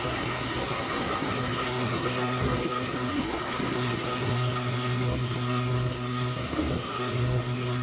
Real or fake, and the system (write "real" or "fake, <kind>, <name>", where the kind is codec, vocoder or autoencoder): fake, codec, SNAC